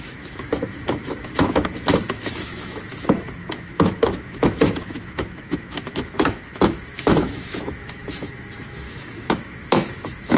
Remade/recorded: remade